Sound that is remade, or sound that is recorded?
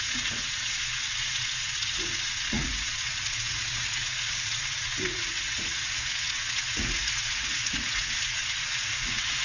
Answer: remade